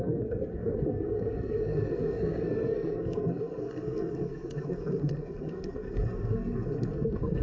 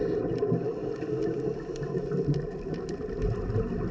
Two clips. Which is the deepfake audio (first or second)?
first